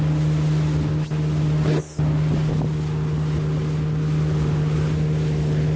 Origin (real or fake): real